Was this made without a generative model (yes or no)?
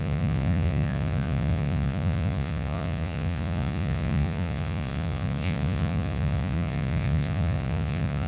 no